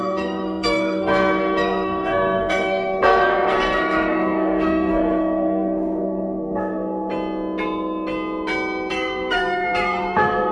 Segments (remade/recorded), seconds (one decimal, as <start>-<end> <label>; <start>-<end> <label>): 0.0-7.1 remade; 7.1-8.9 recorded; 8.9-10.5 remade